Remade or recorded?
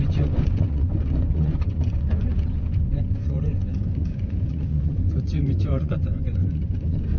remade